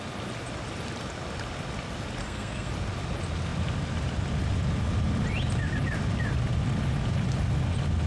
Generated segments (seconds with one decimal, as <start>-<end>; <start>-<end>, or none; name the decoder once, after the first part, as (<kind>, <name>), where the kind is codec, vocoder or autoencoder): 2.2-2.7 (codec, SNAC)